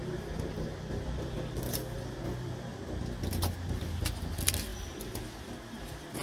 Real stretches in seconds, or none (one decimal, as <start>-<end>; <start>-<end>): 0.0-6.2